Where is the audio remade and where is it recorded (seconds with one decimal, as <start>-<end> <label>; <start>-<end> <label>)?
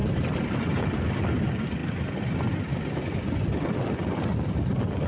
0.0-1.2 remade; 1.2-5.1 recorded